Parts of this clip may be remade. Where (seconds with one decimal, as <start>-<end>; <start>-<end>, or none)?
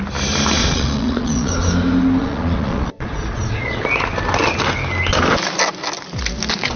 0.6-1.5; 2.2-3.8